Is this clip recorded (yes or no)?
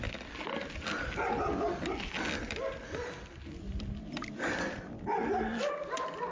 yes